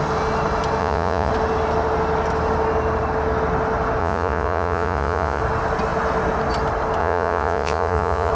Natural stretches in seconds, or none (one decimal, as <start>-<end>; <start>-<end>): 0.0-0.8; 1.3-4.0; 5.4-7.0

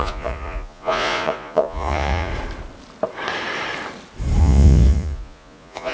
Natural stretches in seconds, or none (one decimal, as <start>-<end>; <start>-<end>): 2.3-4.4

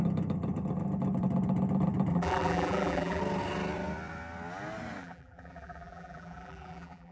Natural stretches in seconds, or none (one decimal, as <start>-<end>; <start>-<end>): 0.0-2.1; 3.2-5.0